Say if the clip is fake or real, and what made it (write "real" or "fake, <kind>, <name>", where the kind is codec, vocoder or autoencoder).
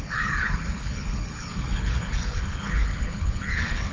fake, codec, HILCodec